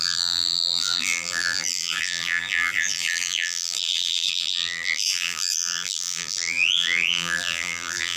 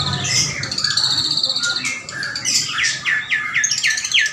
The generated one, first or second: first